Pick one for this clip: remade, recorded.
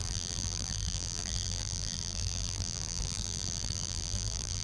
remade